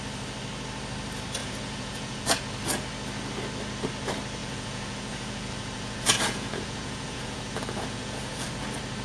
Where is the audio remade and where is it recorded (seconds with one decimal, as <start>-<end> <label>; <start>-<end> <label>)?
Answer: 0.0-1.4 recorded; 1.4-2.4 remade; 2.4-4.4 recorded; 4.4-8.6 remade; 8.6-9.0 recorded